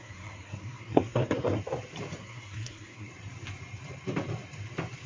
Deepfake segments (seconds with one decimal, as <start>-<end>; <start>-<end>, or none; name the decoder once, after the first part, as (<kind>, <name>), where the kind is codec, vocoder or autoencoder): 0.0-1.6 (codec, SNAC); 2.2-3.1